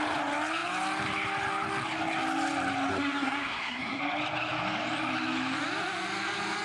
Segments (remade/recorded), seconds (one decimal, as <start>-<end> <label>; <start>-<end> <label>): 0.0-2.9 recorded; 2.9-4.0 remade; 4.0-6.6 recorded